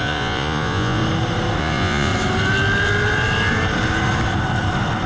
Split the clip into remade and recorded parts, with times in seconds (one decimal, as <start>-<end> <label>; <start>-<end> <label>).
0.0-1.0 remade; 1.0-1.6 recorded; 1.6-2.1 remade; 2.1-5.1 recorded